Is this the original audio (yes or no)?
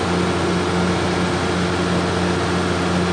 yes